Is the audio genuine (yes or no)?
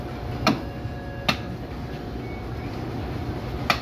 yes